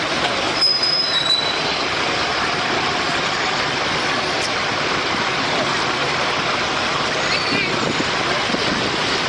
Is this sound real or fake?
real